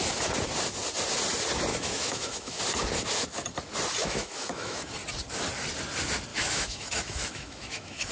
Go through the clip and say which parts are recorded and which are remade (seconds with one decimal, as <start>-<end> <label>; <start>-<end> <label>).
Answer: 0.0-1.7 recorded; 1.7-2.6 remade; 2.6-4.0 recorded; 4.0-4.9 remade; 4.9-6.3 recorded; 6.3-8.1 remade